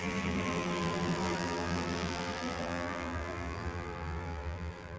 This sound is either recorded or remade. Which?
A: remade